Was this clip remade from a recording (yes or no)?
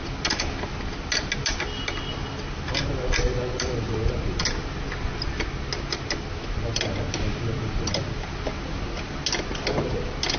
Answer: no